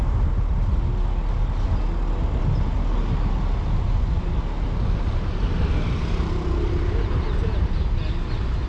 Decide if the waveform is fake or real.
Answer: real